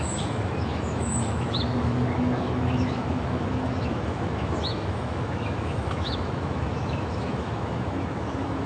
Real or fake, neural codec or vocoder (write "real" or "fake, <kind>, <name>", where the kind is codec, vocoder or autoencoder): fake, autoencoder, DAC-VAE